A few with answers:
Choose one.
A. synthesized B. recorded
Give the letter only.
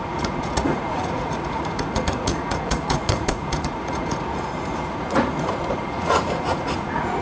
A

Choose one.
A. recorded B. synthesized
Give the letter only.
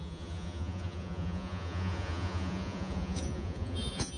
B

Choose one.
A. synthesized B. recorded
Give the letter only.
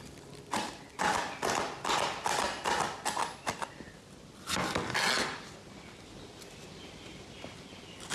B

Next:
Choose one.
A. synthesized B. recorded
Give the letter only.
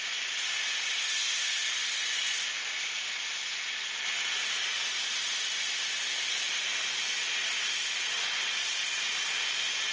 B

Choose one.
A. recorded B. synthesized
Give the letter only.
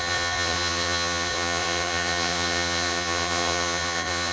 B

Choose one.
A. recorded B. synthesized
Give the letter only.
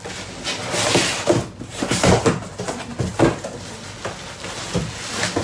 A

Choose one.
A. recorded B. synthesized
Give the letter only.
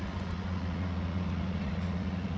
B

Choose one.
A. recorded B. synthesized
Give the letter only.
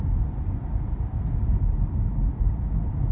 A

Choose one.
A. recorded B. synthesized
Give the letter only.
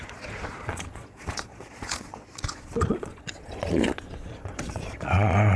B